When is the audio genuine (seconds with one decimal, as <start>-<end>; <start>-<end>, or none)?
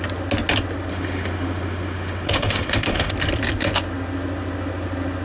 0.0-0.9; 3.1-5.2